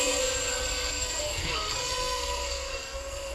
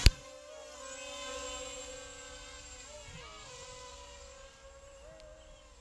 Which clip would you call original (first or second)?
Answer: second